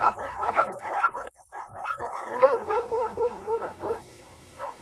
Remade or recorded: remade